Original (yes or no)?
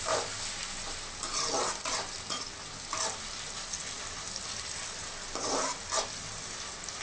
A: yes